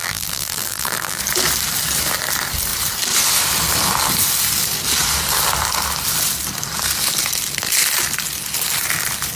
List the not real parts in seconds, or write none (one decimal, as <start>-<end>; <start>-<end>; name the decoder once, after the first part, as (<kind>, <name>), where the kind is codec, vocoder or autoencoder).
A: 0.0-1.2 (vocoder, BigVGAN v2)